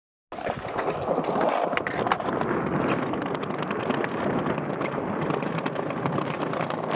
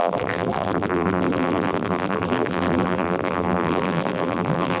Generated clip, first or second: second